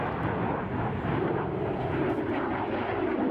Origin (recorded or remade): recorded